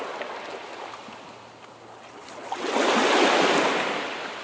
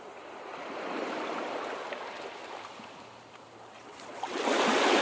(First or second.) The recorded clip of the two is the first